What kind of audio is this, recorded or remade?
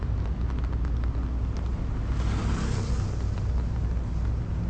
recorded